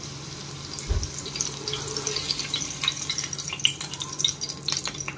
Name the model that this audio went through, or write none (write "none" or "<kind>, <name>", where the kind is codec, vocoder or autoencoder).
none